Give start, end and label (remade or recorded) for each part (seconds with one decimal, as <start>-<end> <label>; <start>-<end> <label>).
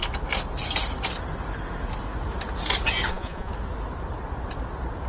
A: 0.0-3.1 recorded; 3.1-3.5 remade; 3.5-5.1 recorded